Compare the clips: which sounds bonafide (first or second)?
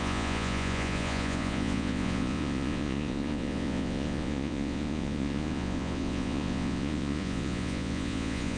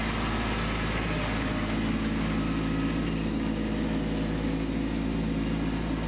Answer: second